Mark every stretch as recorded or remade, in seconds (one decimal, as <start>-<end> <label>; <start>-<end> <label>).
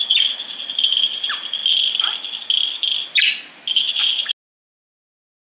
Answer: 0.0-5.6 recorded